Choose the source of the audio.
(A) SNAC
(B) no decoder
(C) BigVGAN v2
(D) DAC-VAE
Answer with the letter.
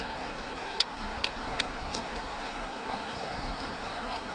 A